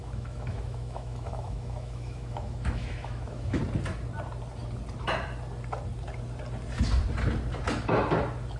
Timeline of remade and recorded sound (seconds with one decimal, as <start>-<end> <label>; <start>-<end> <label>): 0.0-3.6 remade; 3.6-8.6 recorded